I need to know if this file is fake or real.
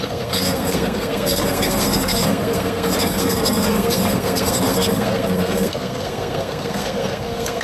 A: fake